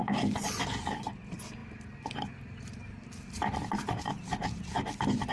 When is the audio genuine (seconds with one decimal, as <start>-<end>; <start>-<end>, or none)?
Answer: 0.0-5.3